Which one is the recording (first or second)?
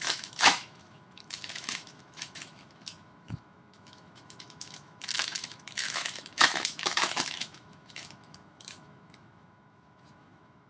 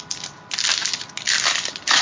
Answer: second